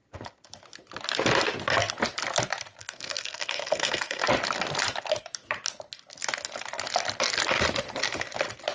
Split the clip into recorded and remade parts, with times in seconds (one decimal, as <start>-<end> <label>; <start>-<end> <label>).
0.0-2.8 recorded; 2.8-4.2 remade; 4.2-8.7 recorded